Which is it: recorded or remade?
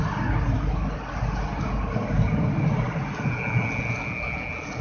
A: recorded